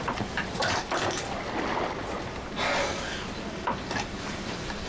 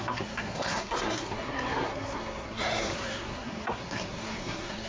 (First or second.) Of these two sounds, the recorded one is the first